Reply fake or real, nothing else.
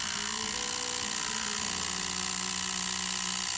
real